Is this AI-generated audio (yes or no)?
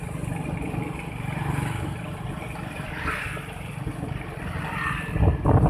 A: yes